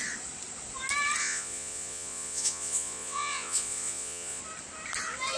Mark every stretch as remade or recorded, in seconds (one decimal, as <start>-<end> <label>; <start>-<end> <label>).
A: 0.0-1.2 recorded; 1.2-4.4 remade; 4.4-5.4 recorded

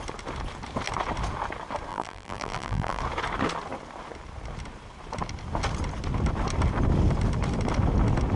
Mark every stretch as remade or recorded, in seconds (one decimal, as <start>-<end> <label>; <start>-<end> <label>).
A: 0.0-1.9 recorded; 1.9-3.0 remade; 3.0-8.4 recorded

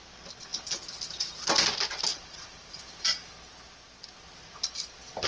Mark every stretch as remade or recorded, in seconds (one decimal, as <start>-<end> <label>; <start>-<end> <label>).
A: 0.0-2.1 recorded; 2.1-3.3 remade; 3.3-5.3 recorded

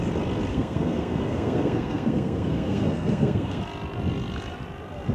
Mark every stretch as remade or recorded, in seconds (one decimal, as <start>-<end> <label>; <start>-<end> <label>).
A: 0.0-0.5 recorded; 0.5-3.6 remade; 3.6-5.1 recorded

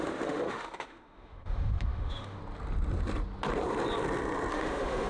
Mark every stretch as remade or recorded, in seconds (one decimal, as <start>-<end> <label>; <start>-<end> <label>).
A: 0.0-2.4 remade; 2.4-4.5 recorded; 4.5-5.1 remade